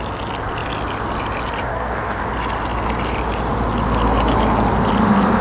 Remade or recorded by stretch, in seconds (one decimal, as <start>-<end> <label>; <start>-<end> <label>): 0.0-1.7 recorded; 1.7-2.2 remade; 2.2-5.4 recorded